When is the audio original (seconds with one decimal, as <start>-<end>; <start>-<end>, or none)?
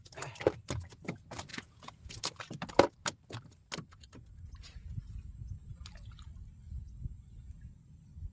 0.0-1.5; 2.2-3.9; 5.7-8.3